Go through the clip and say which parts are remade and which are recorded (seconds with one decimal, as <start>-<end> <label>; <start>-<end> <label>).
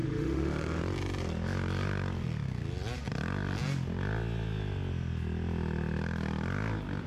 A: 0.0-0.8 remade; 0.8-7.1 recorded